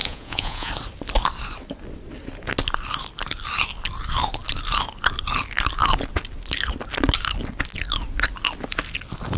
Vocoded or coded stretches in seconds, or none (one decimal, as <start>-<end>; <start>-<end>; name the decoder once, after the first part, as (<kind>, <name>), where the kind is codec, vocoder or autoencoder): 0.0-0.7 (vocoder, Vocos)